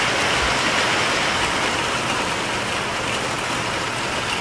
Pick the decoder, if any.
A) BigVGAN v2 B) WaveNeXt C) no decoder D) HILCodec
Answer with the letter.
C